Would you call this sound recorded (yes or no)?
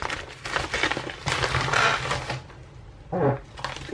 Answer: yes